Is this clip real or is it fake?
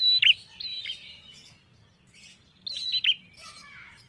real